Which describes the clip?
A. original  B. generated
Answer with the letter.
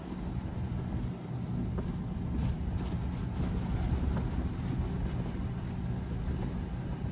A